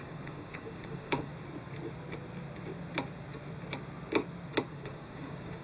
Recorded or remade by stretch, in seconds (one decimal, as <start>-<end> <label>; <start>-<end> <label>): 0.0-1.3 remade; 1.3-4.7 recorded; 4.7-5.6 remade